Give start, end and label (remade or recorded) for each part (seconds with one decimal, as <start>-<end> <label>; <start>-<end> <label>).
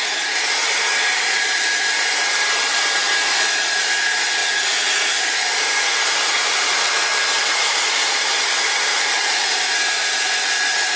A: 0.0-4.4 recorded; 4.4-5.1 remade; 5.1-7.3 recorded; 7.3-8.1 remade; 8.1-8.9 recorded; 8.9-9.6 remade; 9.6-11.0 recorded